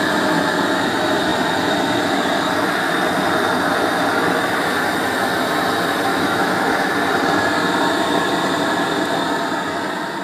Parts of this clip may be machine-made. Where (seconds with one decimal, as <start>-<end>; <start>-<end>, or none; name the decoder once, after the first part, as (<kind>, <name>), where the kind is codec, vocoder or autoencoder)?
6.1-6.9 (autoencoder, DAC-VAE)

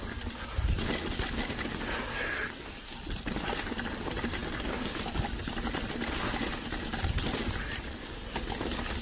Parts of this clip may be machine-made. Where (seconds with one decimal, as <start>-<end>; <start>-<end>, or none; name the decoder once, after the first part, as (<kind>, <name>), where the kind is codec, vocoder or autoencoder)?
none

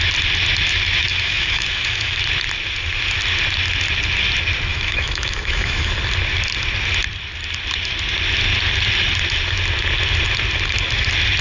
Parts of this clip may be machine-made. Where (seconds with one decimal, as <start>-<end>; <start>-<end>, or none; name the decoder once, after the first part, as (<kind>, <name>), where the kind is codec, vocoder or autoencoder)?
1.1-2.2 (autoencoder, DAC-VAE); 4.7-5.9

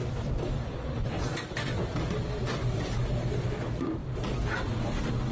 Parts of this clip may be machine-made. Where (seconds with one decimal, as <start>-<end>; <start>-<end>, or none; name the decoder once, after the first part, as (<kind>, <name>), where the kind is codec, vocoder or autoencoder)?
none

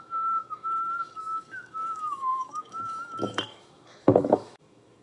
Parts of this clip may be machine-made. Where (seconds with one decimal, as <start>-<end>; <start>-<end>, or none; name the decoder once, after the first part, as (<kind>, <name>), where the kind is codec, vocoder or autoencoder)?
0.0-5.0 (autoencoder, DAC-VAE)

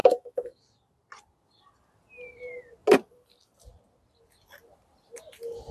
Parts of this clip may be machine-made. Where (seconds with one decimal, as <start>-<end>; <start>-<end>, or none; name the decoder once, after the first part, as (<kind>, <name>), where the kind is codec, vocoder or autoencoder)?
0.0-0.6 (autoencoder, DAC-VAE)

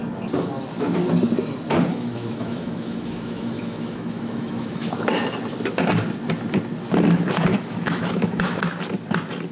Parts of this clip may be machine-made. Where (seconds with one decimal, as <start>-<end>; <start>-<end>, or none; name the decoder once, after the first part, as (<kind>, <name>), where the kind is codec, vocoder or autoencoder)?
1.9-4.9 (autoencoder, DAC-VAE); 7.5-8.6

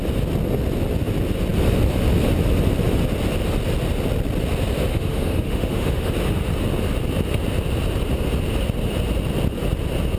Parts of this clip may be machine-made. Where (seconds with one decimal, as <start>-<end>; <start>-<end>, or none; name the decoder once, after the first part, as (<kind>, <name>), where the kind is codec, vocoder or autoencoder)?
4.9-6.1 (autoencoder, DAC-VAE)